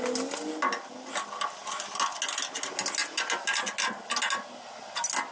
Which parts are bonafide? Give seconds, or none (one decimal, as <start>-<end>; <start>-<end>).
0.0-5.3